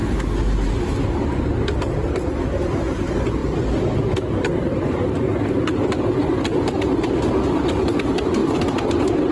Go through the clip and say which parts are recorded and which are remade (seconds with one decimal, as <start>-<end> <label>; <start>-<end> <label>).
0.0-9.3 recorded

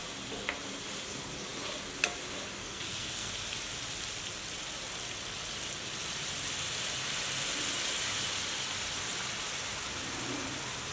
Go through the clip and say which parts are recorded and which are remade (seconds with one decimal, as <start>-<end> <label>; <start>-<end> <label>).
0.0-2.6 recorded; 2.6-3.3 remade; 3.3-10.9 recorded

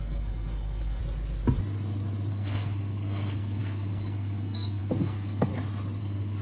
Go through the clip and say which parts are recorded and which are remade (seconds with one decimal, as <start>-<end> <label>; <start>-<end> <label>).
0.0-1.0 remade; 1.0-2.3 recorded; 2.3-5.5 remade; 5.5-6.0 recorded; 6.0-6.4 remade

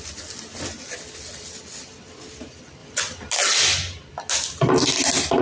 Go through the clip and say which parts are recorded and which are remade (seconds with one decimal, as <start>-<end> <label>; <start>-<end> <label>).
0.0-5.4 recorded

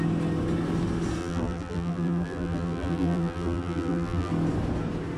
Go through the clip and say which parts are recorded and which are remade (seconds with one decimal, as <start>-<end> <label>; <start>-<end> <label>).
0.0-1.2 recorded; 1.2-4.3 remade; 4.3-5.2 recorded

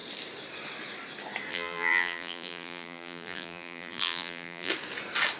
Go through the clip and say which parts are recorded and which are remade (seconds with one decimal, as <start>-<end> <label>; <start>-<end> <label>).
0.0-1.5 recorded; 1.5-4.7 remade; 4.7-5.4 recorded

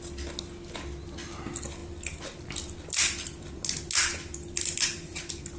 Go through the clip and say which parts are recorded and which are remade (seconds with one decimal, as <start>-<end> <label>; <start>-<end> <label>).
0.0-5.6 recorded